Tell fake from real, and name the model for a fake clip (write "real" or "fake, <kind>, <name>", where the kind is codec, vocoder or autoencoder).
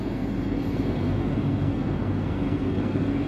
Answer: fake, codec, SNAC